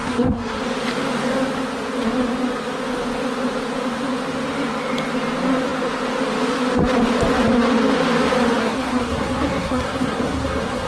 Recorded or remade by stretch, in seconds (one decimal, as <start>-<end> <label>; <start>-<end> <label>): 0.0-0.6 remade; 0.6-8.6 recorded; 8.6-10.9 remade